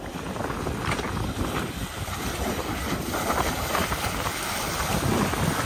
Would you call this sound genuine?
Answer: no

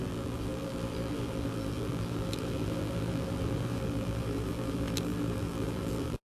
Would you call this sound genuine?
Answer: no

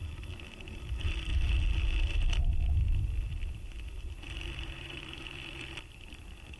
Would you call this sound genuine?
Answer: no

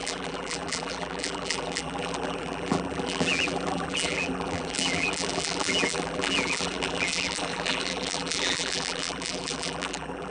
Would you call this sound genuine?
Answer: no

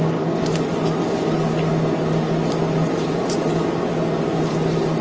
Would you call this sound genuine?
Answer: yes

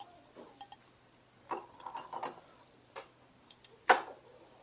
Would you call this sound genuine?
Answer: yes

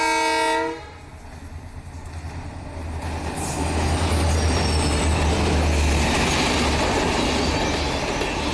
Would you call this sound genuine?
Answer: yes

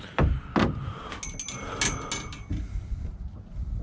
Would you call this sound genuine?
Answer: yes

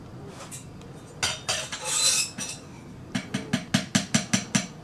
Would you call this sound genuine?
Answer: yes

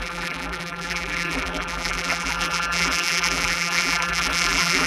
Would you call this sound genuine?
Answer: no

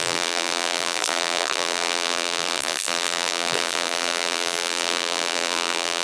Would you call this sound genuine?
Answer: no